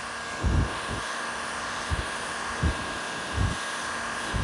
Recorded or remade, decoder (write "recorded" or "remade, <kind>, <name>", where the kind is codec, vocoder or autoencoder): recorded